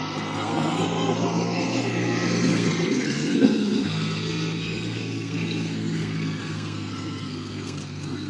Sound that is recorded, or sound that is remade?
remade